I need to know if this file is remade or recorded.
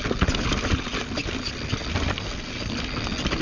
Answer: recorded